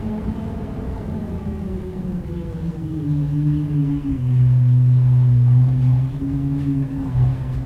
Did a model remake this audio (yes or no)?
yes